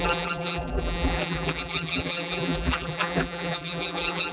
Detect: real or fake fake